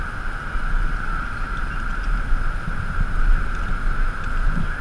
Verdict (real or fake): real